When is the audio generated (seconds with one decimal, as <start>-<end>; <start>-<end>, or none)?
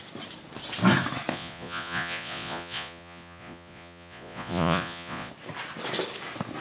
1.3-5.3